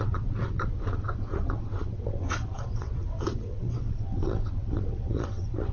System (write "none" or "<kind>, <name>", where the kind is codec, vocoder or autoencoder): vocoder, WaveNeXt